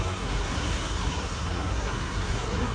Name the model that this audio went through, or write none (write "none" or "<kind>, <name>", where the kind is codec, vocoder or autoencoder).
codec, SNAC